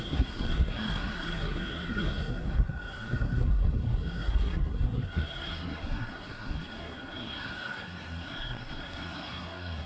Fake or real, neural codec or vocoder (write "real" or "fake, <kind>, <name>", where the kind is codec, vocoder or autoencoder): fake, codec, SNAC